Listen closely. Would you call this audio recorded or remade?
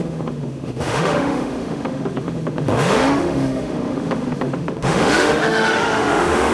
remade